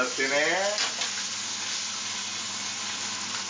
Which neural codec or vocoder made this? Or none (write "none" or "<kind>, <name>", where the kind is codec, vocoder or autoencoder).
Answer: none